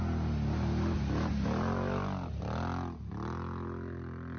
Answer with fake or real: real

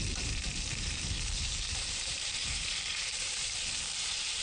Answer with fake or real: fake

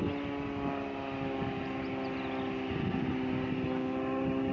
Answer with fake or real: real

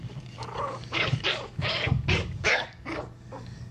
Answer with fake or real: fake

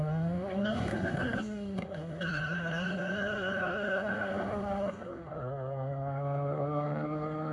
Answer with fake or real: fake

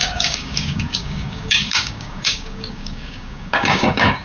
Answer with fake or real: fake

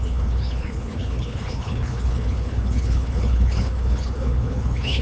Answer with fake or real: fake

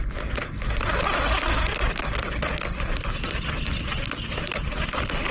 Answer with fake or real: real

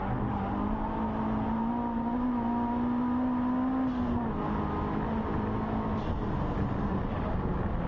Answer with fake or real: real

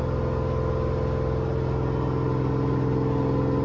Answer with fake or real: real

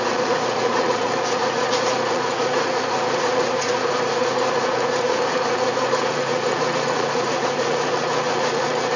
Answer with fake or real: fake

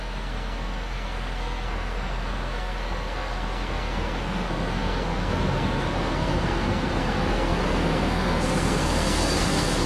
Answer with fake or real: fake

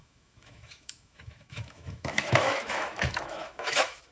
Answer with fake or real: fake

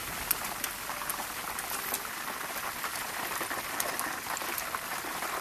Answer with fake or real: real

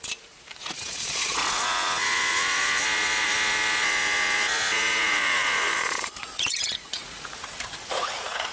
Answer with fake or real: fake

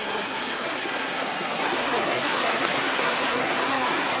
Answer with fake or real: fake